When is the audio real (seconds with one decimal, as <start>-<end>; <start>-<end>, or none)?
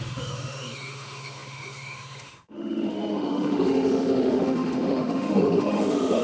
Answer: none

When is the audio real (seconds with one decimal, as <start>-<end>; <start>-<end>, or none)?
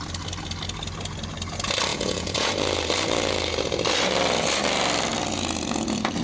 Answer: 0.0-1.9; 2.5-6.2